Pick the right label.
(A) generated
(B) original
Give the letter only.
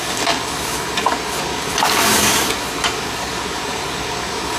A